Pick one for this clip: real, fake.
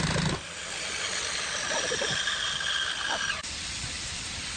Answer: real